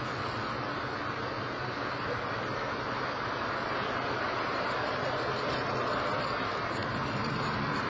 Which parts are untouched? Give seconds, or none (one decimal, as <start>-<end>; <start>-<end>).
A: 0.0-7.9